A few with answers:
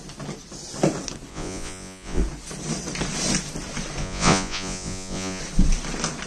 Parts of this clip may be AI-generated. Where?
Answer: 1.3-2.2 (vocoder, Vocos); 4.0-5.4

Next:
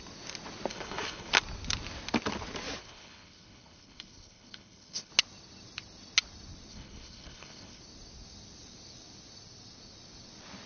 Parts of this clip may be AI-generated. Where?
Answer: 0.7-1.3 (codec, HILCodec); 2.8-5.1; 6.7-7.8

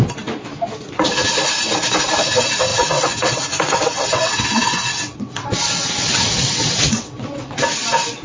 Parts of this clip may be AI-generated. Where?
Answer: 2.7-7.6 (vocoder, WaveNeXt)